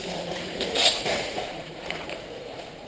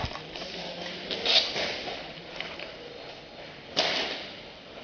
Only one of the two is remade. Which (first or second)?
first